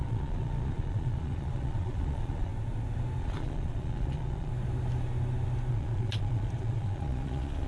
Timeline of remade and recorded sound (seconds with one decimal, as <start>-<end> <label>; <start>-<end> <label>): 0.0-2.5 remade; 2.5-3.2 recorded; 3.2-4.5 remade; 4.5-5.7 recorded; 5.7-7.7 remade